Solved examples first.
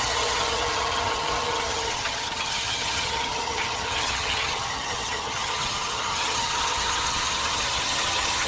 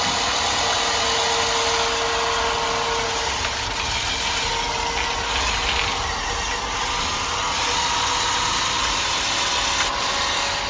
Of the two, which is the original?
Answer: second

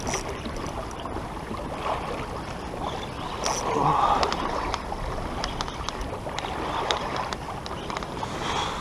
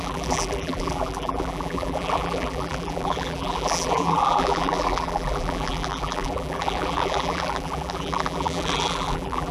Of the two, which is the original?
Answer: first